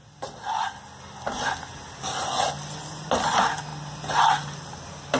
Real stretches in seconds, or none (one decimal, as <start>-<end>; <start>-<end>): 0.0-5.2